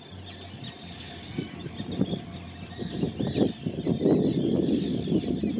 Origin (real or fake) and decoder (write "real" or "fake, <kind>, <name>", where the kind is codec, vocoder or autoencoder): real